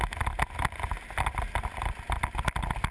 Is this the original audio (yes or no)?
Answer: yes